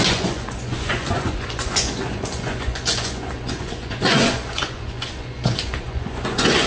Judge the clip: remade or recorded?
remade